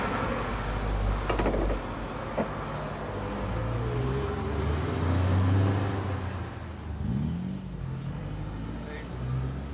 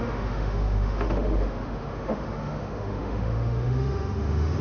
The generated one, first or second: second